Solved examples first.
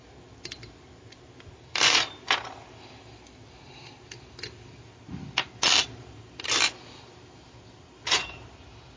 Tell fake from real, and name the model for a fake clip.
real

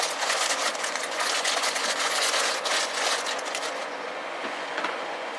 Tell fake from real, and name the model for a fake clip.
fake, vocoder, Vocos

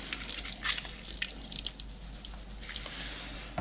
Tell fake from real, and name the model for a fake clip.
real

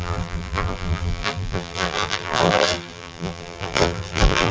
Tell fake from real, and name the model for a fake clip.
fake, vocoder, BigVGAN v2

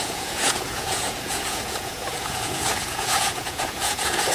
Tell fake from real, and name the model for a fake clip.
fake, vocoder, Vocos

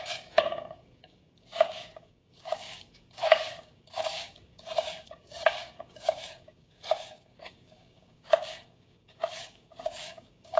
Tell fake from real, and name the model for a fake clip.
fake, codec, DAC